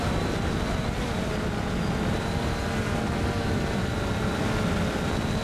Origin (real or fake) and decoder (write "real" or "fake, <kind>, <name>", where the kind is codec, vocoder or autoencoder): fake, vocoder, BigVGAN v2